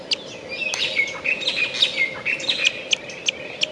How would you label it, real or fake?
real